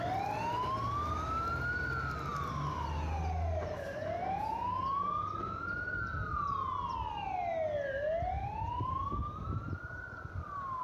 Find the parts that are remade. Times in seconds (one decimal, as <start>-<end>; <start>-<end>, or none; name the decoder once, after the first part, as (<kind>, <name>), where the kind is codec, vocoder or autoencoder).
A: none